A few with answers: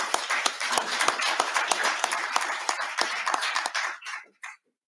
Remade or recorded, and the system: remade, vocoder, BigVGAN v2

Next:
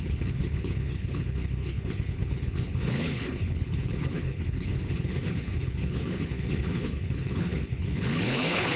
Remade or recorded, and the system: remade, codec, HILCodec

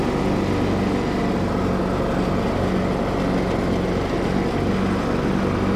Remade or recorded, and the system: recorded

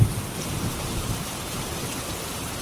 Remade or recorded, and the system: remade, vocoder, BigVGAN v2